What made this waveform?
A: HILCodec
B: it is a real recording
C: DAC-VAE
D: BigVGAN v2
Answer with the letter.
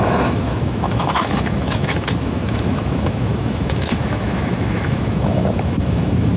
C